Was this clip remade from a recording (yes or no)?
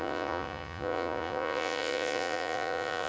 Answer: yes